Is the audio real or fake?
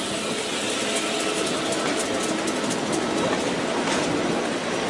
real